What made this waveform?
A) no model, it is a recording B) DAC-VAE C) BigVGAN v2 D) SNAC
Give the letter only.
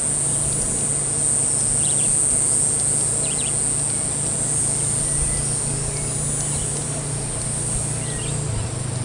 A